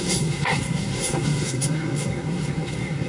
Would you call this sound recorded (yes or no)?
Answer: no